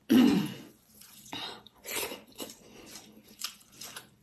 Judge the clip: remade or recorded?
remade